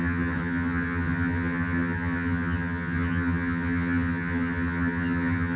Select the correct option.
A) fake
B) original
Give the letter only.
A